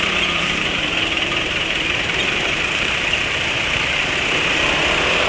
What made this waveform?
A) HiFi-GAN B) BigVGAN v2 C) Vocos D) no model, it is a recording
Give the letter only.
B